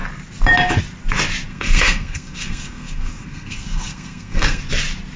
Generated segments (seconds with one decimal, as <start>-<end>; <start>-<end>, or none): 1.5-4.6